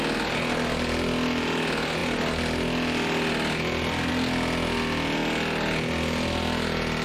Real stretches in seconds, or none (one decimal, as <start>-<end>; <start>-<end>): 0.0-7.0